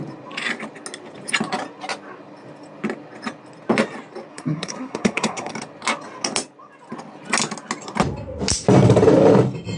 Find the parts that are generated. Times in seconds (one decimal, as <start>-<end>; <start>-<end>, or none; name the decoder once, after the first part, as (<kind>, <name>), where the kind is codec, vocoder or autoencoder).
4.3-5.5 (codec, SNAC)